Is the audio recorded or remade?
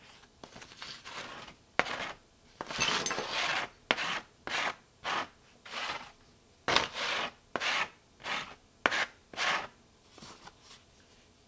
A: recorded